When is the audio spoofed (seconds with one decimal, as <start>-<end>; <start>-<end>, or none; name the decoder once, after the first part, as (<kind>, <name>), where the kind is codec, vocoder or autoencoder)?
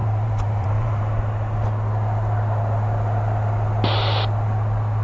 0.0-1.0 (vocoder, BigVGAN v2)